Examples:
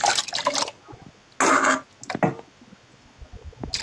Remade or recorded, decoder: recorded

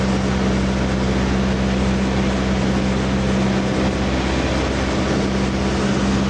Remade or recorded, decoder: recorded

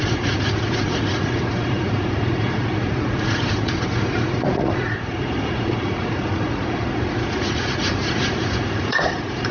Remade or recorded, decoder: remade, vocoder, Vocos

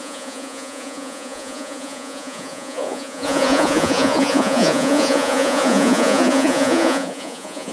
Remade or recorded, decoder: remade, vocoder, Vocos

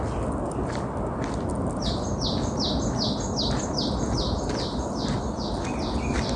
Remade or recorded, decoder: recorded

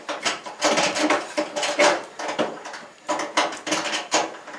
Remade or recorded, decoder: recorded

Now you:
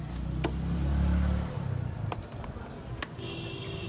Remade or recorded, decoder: recorded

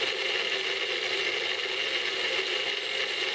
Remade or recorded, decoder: recorded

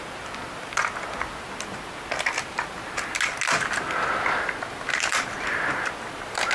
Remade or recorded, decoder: recorded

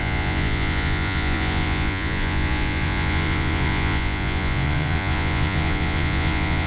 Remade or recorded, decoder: remade, vocoder, Vocos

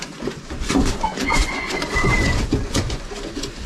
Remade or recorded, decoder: remade, vocoder, Vocos